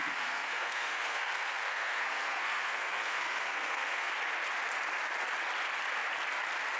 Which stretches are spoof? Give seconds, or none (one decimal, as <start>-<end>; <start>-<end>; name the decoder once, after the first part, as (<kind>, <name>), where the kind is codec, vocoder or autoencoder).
0.0-4.1 (codec, SNAC)